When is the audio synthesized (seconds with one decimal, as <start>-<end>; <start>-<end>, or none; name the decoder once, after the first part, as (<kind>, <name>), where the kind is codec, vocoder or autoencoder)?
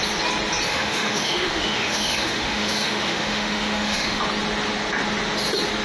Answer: 0.7-4.2 (autoencoder, DAC-VAE)